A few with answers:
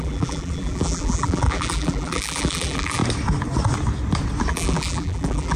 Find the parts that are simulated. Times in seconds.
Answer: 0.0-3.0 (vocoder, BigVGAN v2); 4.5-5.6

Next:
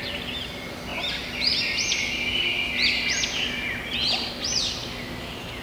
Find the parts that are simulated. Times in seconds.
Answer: none